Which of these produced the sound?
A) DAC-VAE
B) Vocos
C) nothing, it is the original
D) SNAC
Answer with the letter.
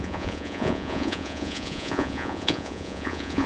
B